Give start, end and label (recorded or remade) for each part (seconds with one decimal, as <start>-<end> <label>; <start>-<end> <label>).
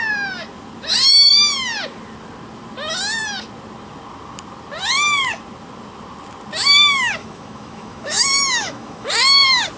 0.0-7.2 recorded; 7.2-9.1 remade; 9.1-9.8 recorded